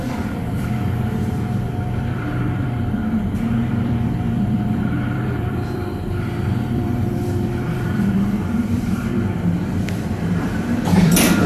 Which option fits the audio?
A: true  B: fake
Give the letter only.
B